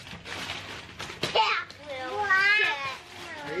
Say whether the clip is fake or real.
real